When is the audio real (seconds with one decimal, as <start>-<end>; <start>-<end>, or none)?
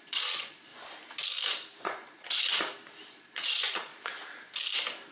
0.7-1.8; 2.5-3.1; 3.9-5.1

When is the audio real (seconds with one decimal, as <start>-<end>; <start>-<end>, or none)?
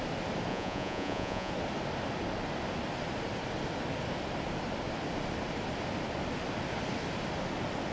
0.0-0.5; 1.5-7.9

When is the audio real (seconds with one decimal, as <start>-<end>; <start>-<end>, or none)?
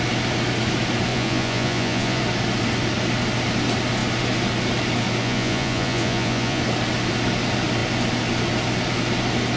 0.0-1.1; 2.2-5.2; 6.6-9.6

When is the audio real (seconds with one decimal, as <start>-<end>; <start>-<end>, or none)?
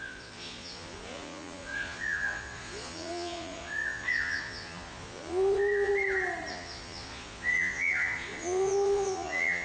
5.9-6.5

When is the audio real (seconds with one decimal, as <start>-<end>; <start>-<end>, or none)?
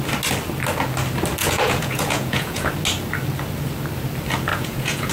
0.0-1.4; 2.7-4.5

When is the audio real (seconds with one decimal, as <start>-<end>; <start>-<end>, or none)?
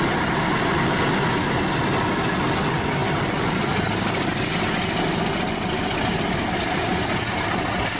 0.0-8.0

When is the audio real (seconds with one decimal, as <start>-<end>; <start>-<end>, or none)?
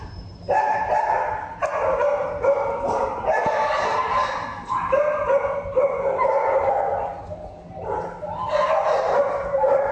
0.0-9.9